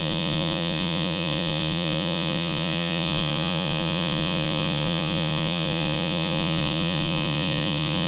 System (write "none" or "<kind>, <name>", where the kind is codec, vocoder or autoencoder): vocoder, Vocos